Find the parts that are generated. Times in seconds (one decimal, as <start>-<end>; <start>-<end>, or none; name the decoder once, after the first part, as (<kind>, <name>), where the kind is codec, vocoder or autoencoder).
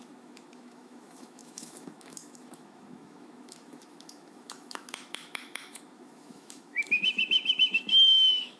0.0-8.6 (autoencoder, DAC-VAE)